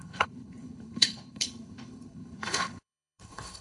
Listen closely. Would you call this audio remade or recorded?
remade